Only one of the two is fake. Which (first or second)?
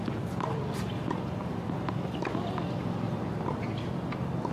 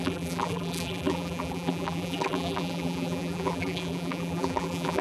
second